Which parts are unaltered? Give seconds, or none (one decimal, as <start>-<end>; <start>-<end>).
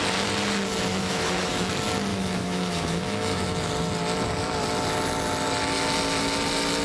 0.0-0.9; 1.7-2.1; 3.7-6.8